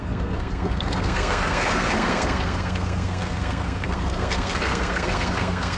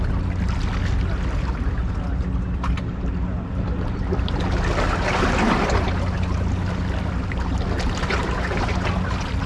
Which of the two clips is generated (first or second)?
first